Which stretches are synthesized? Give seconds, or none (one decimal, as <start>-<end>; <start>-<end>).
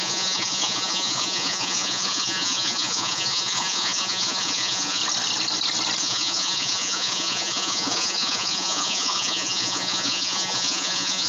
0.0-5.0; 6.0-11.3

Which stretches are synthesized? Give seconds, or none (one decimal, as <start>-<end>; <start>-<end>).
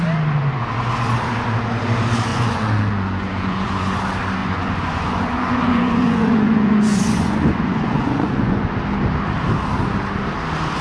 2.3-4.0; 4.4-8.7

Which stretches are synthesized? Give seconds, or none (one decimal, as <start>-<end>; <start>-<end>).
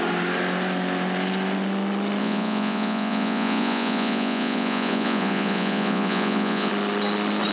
2.2-6.7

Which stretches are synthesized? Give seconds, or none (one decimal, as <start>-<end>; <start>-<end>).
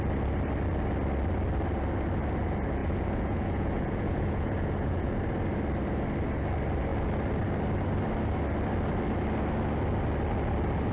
2.8-5.1